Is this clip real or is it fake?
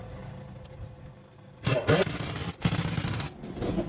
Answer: real